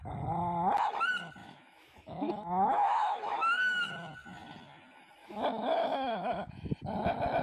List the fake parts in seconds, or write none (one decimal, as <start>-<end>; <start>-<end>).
1.4-3.9; 5.2-6.7